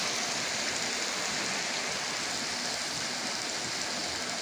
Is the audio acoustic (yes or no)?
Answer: yes